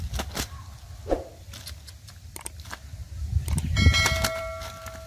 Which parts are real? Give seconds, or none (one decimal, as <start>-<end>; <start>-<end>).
0.0-5.1